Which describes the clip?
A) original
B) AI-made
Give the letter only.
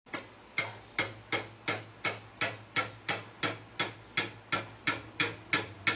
A